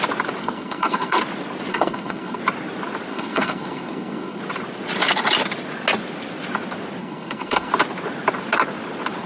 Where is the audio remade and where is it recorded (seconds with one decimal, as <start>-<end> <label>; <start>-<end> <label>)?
0.0-0.4 recorded; 0.4-1.2 remade; 1.2-1.7 recorded; 1.7-2.4 remade; 2.4-3.1 recorded; 3.1-4.4 remade; 4.4-7.0 recorded; 7.0-7.7 remade; 7.7-9.3 recorded